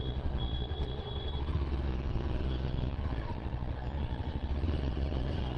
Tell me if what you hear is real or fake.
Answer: fake